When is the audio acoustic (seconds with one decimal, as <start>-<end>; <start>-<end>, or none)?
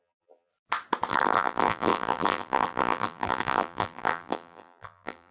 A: 0.5-1.1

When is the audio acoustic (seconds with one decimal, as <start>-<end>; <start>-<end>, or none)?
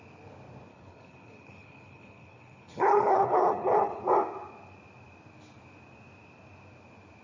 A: 0.0-0.7; 4.0-7.2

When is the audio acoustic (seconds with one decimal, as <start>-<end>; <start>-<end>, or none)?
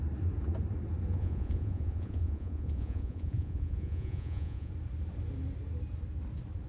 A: 0.0-1.1; 4.7-6.7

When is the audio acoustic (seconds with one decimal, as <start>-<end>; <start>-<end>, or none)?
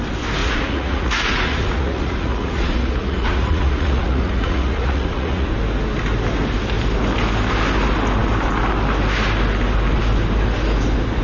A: 0.0-0.4; 5.5-11.2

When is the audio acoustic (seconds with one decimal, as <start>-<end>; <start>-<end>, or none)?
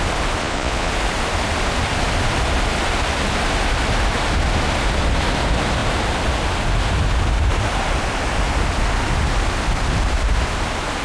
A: 0.0-0.4; 0.9-11.0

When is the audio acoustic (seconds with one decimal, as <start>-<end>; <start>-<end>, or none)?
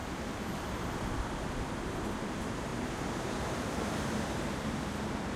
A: none